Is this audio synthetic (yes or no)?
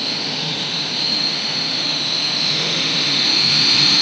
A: yes